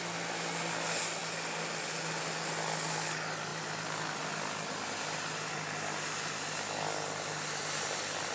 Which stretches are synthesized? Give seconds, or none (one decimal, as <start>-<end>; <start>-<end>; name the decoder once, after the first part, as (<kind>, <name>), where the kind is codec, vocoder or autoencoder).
none